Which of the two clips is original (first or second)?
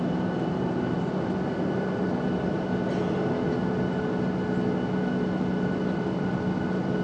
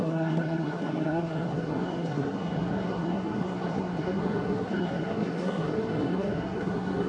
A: first